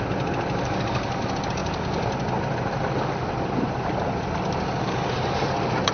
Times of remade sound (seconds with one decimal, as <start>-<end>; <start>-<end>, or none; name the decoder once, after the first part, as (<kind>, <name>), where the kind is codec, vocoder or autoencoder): none